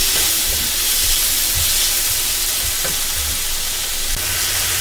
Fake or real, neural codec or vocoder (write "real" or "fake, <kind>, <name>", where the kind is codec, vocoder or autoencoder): real